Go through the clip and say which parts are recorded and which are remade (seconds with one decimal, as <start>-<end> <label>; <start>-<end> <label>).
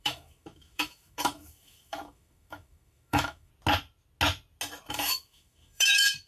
0.0-3.5 remade; 3.5-4.9 recorded; 4.9-6.3 remade